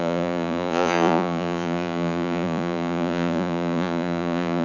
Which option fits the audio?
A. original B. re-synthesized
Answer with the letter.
B